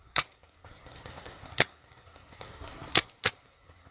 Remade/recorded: remade